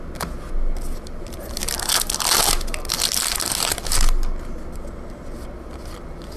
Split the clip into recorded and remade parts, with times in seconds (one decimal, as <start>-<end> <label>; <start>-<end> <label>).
0.0-6.4 recorded